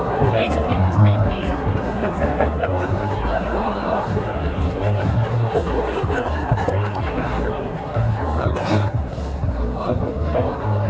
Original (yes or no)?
no